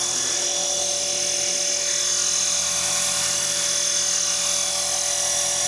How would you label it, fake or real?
real